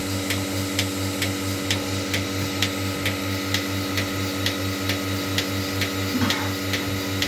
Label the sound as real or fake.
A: real